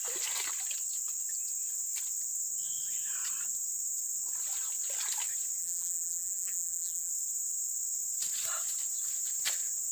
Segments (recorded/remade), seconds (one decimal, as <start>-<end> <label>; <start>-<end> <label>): 0.0-5.6 recorded; 5.6-7.1 remade; 7.1-9.9 recorded